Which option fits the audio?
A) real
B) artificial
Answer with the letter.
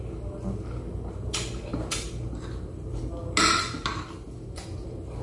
A